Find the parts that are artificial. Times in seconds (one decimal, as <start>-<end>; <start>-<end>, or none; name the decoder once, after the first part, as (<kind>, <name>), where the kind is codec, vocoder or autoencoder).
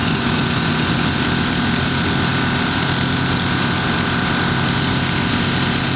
0.0-1.2 (vocoder, Vocos)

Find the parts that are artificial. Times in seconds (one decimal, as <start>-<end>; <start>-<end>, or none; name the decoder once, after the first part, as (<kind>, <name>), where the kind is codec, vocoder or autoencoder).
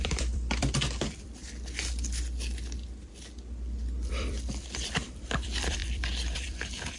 0.0-1.4 (vocoder, BigVGAN v2); 4.1-7.0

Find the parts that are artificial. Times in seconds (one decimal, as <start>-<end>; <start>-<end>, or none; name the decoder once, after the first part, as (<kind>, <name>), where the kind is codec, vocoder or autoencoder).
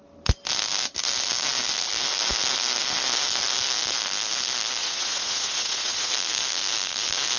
4.8-6.1 (vocoder, Vocos)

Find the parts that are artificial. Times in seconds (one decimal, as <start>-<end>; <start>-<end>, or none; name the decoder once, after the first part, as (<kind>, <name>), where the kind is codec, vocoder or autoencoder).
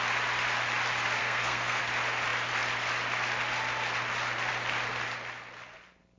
1.2-1.8 (codec, SNAC)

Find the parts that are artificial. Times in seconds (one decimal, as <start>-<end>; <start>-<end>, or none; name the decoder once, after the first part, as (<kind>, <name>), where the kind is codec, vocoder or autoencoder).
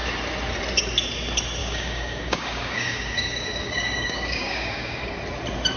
1.6-5.1 (codec, DAC)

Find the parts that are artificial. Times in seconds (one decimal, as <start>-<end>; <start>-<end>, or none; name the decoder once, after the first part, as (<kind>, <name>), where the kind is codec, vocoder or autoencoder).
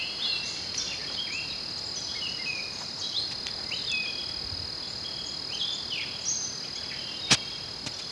none